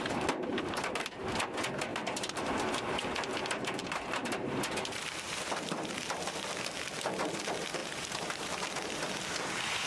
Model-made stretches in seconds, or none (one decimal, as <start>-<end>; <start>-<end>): 0.5-1.2; 1.9-2.9; 3.8-5.5; 7.8-8.5